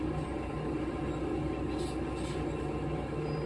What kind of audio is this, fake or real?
real